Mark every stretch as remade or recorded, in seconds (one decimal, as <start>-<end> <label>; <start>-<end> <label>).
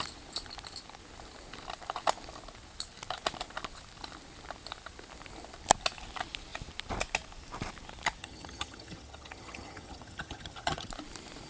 0.0-8.2 recorded; 8.2-10.9 remade; 10.9-11.5 recorded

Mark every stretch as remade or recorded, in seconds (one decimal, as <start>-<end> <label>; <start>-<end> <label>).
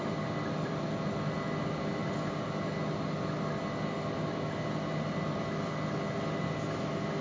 0.0-7.2 recorded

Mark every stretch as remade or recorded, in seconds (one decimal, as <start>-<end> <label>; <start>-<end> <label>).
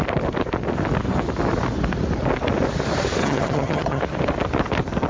0.0-3.2 recorded; 3.2-4.0 remade; 4.0-5.1 recorded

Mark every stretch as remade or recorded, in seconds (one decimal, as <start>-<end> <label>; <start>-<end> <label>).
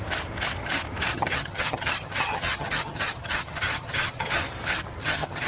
0.0-1.1 recorded; 1.1-4.4 remade; 4.4-5.0 recorded; 5.0-5.5 remade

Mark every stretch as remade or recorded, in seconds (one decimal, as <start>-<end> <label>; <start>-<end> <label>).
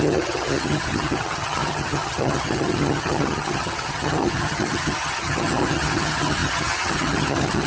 0.0-7.7 remade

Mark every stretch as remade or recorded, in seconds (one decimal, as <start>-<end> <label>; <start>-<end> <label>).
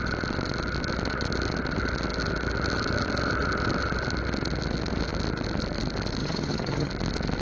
0.0-6.2 recorded; 6.2-6.9 remade; 6.9-7.4 recorded